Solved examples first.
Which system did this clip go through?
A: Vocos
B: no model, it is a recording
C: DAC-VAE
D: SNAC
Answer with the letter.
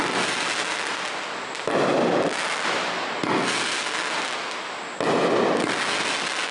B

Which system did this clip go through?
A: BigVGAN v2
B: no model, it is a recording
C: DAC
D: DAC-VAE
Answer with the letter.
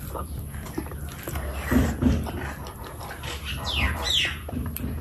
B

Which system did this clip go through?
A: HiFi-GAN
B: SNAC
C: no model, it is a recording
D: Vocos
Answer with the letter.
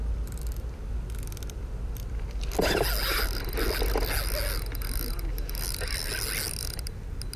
C